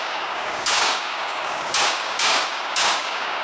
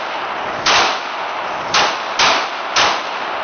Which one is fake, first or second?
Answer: first